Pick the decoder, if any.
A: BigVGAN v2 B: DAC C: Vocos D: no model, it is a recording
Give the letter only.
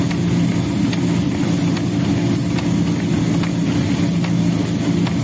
D